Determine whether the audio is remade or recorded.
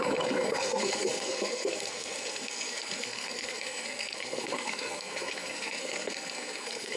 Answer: remade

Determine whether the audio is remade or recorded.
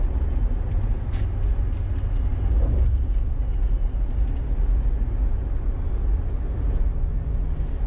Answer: recorded